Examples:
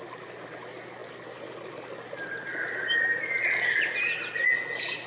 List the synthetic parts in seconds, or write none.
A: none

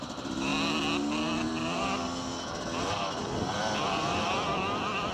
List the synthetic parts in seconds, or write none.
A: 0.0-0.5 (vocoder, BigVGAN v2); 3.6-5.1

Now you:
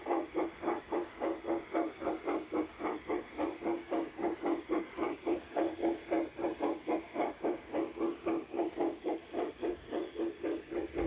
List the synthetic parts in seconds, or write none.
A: 0.0-6.0 (codec, DAC); 6.6-11.1

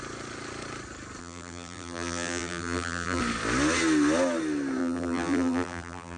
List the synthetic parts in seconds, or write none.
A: 1.2-3.2 (vocoder, BigVGAN v2); 4.8-6.2

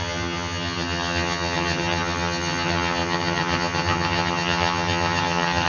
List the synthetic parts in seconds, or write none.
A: 0.0-5.7 (vocoder, HiFi-GAN)